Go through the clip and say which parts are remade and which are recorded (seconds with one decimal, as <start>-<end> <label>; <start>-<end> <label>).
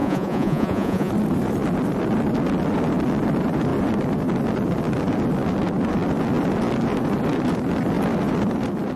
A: 0.0-1.1 remade; 1.1-9.0 recorded